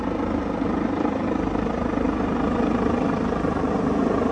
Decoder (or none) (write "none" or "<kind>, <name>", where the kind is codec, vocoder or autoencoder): none